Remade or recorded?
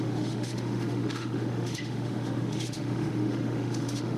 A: remade